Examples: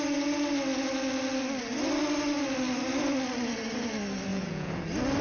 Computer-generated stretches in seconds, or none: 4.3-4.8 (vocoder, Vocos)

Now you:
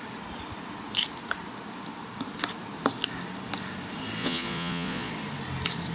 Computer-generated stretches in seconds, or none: 4.2-5.1 (vocoder, Vocos)

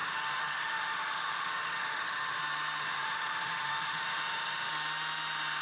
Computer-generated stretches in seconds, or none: 0.0-2.4 (autoencoder, DAC-VAE); 2.8-4.7

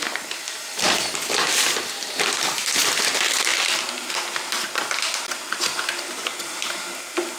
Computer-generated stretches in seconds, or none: 3.5-4.1 (vocoder, BigVGAN v2)

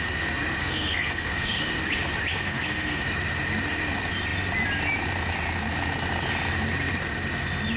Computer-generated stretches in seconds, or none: 0.6-1.6 (codec, SNAC); 2.3-3.0